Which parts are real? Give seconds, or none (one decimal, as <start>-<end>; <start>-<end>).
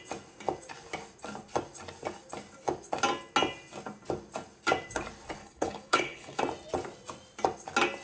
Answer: 0.0-5.4; 6.4-8.0